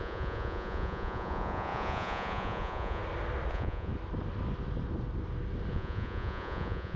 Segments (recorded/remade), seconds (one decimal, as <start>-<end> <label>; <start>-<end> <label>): 0.0-3.0 remade; 3.0-3.5 recorded; 3.5-3.9 remade; 3.9-5.7 recorded; 5.7-7.0 remade